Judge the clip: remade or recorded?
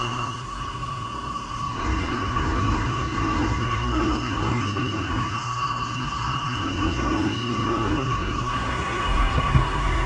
remade